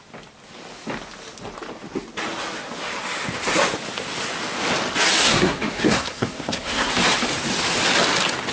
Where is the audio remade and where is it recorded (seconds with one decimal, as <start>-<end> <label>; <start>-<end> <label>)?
0.0-5.2 recorded; 5.2-6.9 remade; 6.9-8.5 recorded